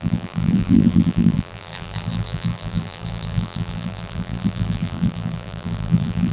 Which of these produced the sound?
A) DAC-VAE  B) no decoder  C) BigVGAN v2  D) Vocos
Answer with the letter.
C